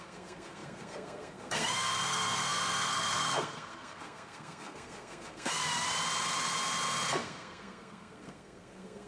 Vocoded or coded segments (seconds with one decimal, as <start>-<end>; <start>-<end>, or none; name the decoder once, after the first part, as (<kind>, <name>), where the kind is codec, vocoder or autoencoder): 0.0-5.6 (codec, SNAC); 7.1-9.1